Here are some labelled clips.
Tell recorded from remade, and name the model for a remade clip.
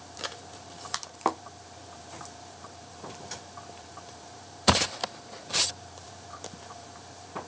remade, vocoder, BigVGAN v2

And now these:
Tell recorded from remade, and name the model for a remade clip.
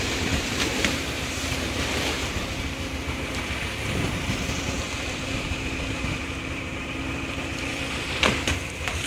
remade, vocoder, BigVGAN v2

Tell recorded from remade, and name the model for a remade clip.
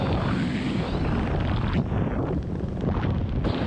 recorded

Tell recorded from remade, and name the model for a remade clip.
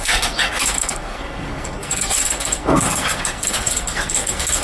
remade, codec, SNAC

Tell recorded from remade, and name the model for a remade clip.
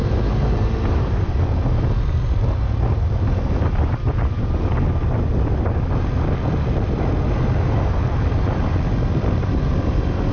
recorded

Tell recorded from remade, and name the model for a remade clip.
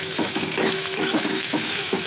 remade, autoencoder, DAC-VAE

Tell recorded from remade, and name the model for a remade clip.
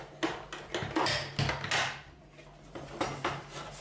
recorded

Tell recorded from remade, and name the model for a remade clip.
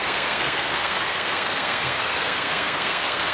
remade, codec, SNAC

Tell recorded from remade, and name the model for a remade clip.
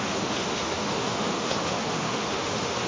remade, autoencoder, DAC-VAE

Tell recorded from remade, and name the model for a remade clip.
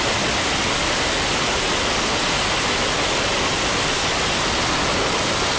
recorded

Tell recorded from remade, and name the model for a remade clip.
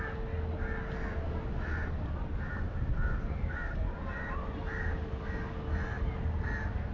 recorded